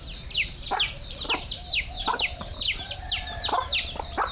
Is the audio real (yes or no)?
yes